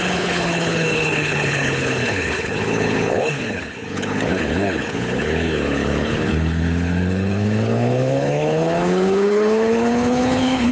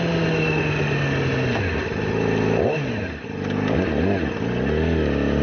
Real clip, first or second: second